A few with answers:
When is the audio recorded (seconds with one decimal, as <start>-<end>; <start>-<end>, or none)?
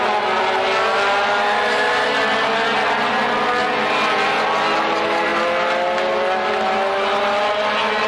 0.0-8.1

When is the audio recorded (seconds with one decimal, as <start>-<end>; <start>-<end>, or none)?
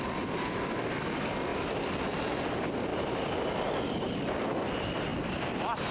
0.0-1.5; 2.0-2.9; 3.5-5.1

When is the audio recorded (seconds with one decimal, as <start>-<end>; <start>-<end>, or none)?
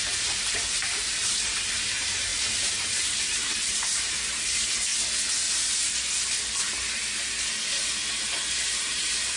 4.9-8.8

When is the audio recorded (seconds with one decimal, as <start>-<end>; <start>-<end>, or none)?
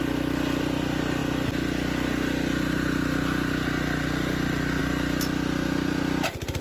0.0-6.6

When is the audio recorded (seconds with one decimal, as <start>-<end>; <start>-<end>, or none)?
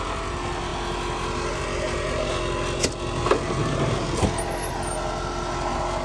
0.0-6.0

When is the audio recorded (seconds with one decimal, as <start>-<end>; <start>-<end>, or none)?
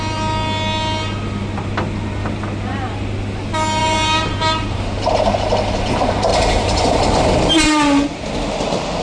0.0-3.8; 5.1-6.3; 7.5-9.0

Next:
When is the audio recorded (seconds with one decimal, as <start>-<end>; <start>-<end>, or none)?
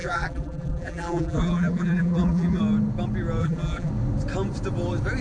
2.6-3.4; 3.9-5.2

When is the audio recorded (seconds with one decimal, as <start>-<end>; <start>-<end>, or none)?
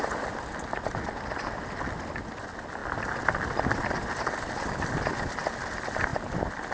0.0-6.7